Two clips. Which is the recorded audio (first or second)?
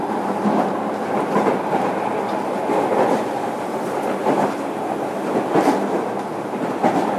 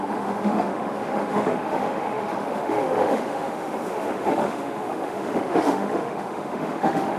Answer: first